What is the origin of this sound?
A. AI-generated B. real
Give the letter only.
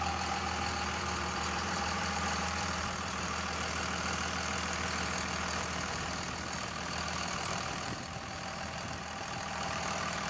A